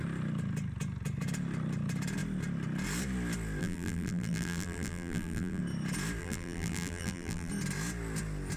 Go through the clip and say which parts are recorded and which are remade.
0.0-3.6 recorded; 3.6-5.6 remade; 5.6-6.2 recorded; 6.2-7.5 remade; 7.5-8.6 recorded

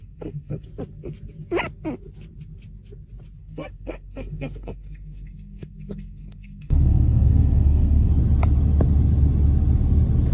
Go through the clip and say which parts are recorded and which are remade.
0.0-0.7 remade; 0.7-3.4 recorded; 3.4-8.1 remade; 8.1-10.3 recorded

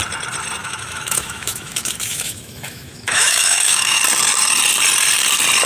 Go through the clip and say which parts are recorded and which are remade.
0.0-0.6 recorded; 0.6-4.0 remade; 4.0-5.7 recorded

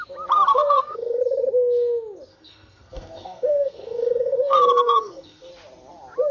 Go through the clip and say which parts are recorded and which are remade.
0.0-0.5 recorded; 0.5-1.2 remade; 1.2-2.3 recorded; 2.3-5.5 remade; 5.5-6.3 recorded

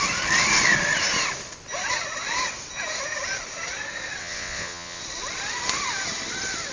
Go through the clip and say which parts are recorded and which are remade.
0.0-4.2 recorded; 4.2-5.0 remade; 5.0-6.7 recorded

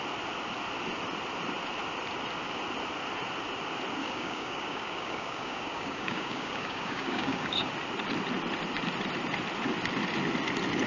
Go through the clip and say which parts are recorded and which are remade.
0.0-4.0 recorded; 4.0-7.7 remade; 7.7-10.9 recorded